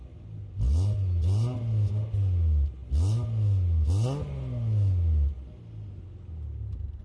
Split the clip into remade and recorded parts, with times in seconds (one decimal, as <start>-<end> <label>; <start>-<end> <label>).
0.0-7.0 recorded